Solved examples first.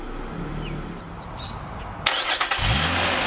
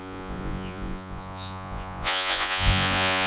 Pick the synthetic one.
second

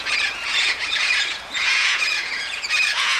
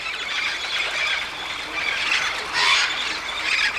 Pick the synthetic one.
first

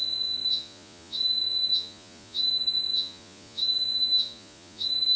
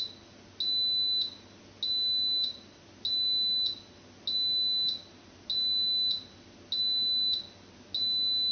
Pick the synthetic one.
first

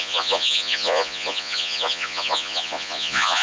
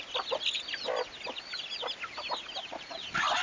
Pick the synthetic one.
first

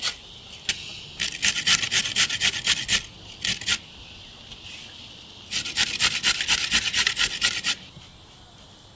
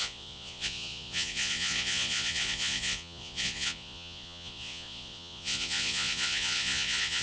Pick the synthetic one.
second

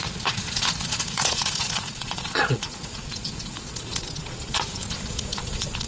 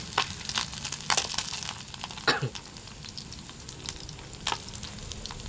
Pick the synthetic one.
first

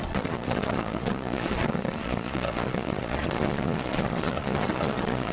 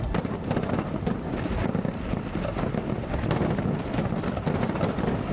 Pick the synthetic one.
first